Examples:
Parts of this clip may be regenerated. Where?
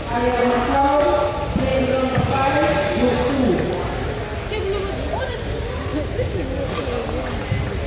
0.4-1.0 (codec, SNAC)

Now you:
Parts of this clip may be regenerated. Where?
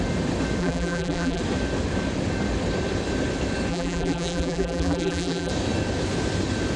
0.6-1.4 (vocoder, BigVGAN v2); 3.7-5.5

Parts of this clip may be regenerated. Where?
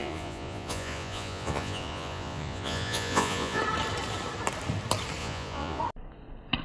0.0-3.6 (vocoder, Vocos); 5.2-5.8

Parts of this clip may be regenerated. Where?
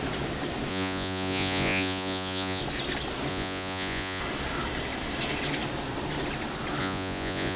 0.7-2.6 (vocoder, Vocos); 3.3-4.2; 6.8-7.6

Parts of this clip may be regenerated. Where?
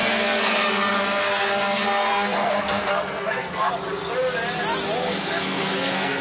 0.0-3.7 (codec, SNAC); 5.0-6.2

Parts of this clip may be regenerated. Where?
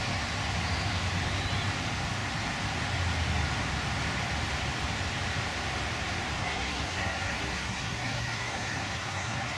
6.4-9.6 (codec, SNAC)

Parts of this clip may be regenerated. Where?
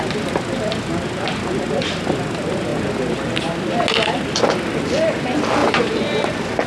none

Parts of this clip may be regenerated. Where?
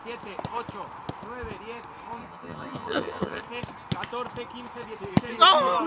2.2-3.4 (vocoder, HiFi-GAN)